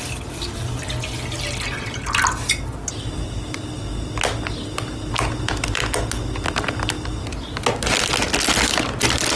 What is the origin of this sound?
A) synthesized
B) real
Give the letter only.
B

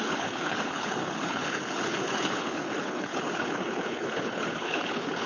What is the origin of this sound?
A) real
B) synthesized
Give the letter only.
B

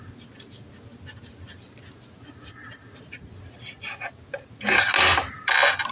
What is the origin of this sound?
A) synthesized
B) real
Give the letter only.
B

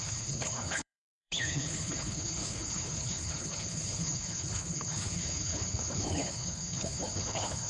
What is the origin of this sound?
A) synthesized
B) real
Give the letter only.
A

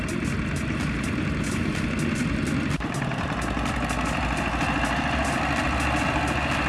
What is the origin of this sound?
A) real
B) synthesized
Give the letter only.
A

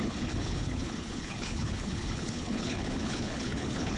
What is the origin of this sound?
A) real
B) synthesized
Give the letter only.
B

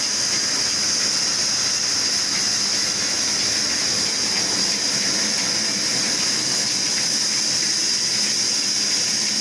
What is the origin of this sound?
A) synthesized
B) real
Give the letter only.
B